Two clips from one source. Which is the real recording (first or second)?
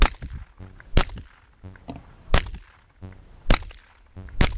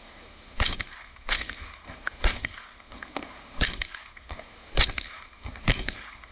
first